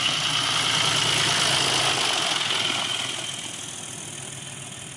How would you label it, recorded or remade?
recorded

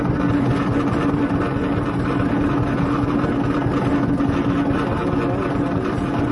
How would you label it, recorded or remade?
recorded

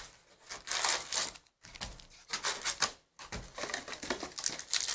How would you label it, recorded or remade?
recorded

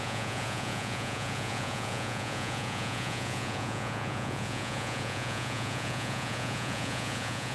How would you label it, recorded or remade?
remade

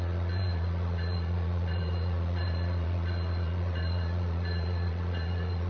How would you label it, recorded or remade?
remade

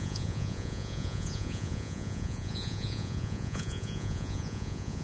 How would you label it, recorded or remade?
remade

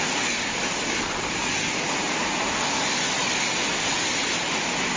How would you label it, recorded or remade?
recorded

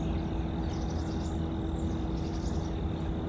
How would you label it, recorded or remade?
recorded